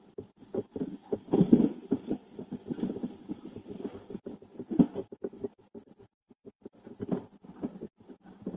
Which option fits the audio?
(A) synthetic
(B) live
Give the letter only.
B